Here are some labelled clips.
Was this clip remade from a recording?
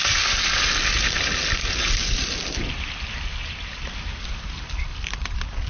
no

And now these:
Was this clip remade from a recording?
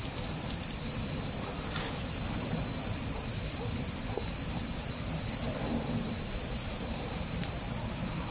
yes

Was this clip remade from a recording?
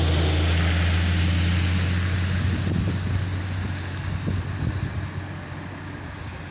no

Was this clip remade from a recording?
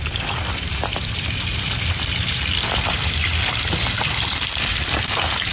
yes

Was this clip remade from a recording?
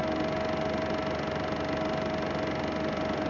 no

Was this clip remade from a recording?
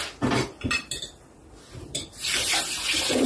yes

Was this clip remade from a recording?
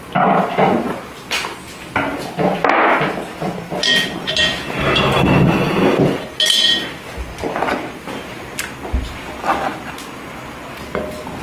no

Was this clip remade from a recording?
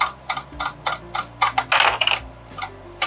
no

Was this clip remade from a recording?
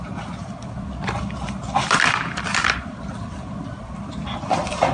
yes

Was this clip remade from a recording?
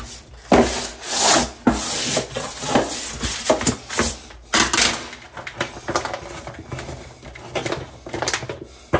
no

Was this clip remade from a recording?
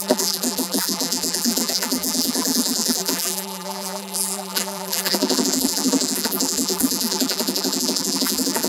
yes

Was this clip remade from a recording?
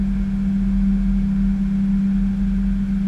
no